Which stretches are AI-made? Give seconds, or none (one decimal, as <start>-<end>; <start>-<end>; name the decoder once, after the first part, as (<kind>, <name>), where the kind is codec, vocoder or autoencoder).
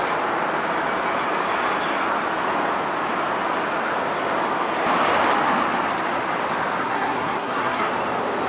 6.8-7.9 (codec, SNAC)